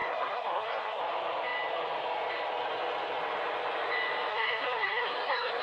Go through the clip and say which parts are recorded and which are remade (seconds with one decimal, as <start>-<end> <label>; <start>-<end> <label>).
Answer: 0.0-1.0 remade; 1.0-4.3 recorded; 4.3-5.6 remade